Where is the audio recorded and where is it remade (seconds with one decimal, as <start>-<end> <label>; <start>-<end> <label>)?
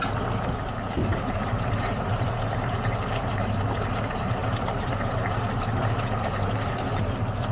0.0-1.1 recorded; 1.1-3.9 remade; 3.9-4.4 recorded; 4.4-6.7 remade; 6.7-7.5 recorded